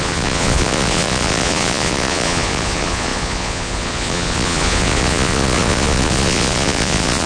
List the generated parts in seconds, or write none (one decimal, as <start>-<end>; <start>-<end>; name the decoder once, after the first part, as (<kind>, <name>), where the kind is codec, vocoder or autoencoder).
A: 0.0-7.3 (vocoder, Vocos)